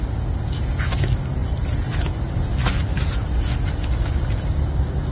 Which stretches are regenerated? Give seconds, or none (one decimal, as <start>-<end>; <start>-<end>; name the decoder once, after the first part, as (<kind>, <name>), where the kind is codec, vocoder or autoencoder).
none